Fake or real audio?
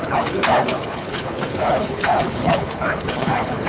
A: fake